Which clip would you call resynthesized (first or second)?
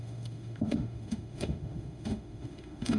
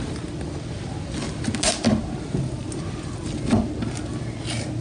first